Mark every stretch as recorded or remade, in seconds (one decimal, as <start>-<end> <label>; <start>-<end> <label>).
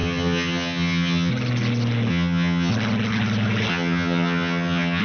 0.0-1.3 remade; 1.3-2.1 recorded; 2.1-2.7 remade; 2.7-3.7 recorded; 3.7-5.0 remade